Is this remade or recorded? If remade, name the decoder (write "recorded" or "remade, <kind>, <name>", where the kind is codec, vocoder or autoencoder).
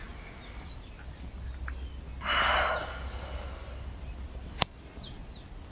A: recorded